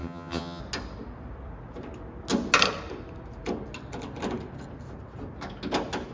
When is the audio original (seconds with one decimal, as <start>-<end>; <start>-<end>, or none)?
0.6-6.1